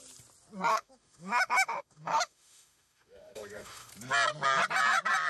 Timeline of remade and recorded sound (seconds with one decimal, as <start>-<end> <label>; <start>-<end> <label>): 0.0-0.7 recorded; 0.7-3.9 remade; 3.9-5.3 recorded